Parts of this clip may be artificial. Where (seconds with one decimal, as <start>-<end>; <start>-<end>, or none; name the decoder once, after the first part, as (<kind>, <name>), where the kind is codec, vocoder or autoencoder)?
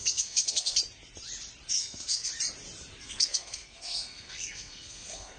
0.0-0.8 (codec, SNAC); 1.7-2.3; 3.0-5.4